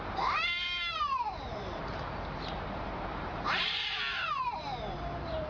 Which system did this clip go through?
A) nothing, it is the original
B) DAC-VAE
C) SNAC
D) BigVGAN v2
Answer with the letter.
D